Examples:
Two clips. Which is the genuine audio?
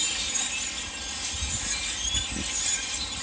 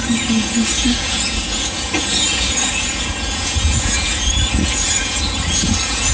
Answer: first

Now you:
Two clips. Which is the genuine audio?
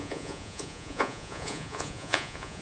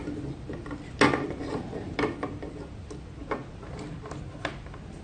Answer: second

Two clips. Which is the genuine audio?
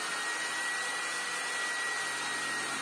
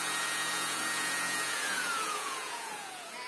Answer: first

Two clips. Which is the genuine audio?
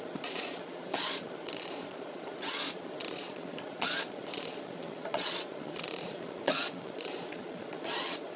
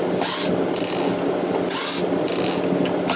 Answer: second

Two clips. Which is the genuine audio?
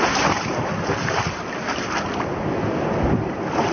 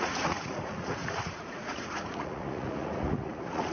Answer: first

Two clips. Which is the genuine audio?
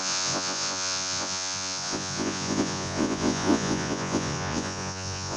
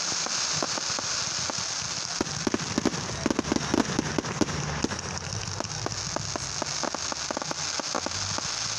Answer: second